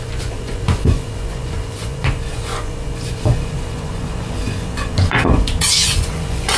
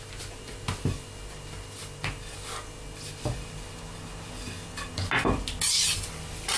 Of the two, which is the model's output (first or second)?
first